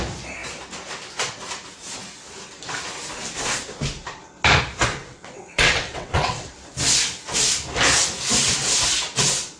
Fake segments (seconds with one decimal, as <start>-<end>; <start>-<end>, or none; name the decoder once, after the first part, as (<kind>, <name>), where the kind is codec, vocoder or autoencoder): 5.0-6.5 (vocoder, WaveNeXt)